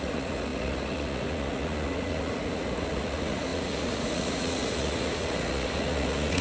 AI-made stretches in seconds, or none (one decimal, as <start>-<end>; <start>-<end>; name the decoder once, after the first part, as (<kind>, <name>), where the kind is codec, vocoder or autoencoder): 0.0-6.4 (vocoder, Vocos)